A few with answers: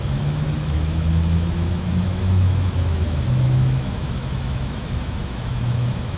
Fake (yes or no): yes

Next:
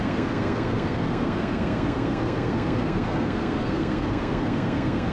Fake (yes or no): yes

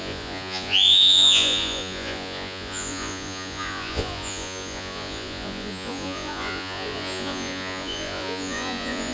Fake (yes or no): yes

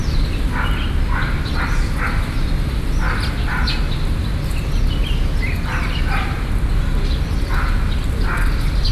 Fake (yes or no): no